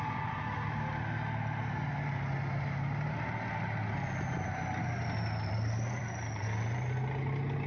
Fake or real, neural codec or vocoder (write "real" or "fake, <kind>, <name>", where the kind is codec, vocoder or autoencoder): real